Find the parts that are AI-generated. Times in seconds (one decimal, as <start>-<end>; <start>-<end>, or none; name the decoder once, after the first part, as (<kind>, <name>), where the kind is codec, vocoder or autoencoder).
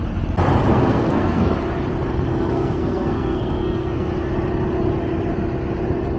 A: 0.7-1.5 (codec, SNAC); 2.3-4.1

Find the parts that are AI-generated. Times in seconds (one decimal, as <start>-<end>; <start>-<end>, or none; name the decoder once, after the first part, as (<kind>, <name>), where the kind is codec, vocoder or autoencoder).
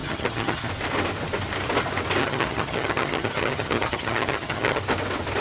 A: 0.0-0.7 (vocoder, HiFi-GAN); 2.2-4.8